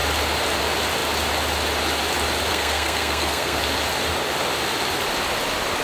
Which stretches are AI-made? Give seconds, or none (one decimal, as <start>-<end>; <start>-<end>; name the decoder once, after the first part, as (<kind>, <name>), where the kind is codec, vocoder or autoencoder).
2.5-3.6 (codec, SNAC)